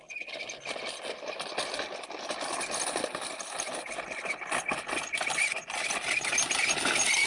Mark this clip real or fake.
real